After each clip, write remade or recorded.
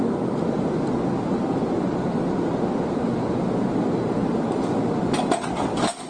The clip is recorded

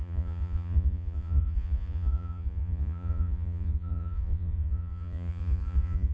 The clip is remade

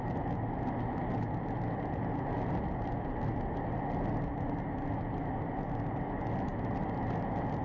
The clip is recorded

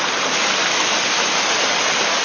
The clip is recorded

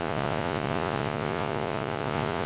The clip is remade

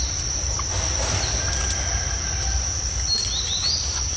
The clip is recorded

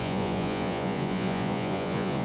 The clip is remade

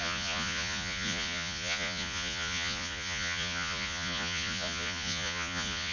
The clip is remade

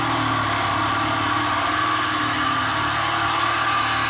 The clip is recorded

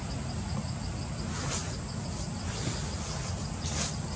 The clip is recorded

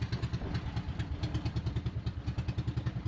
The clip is recorded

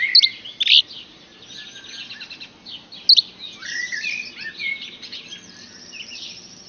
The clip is recorded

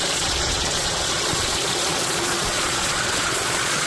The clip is remade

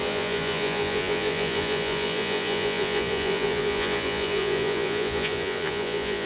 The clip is remade